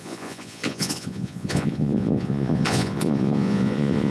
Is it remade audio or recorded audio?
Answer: remade